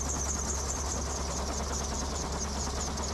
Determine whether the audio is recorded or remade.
recorded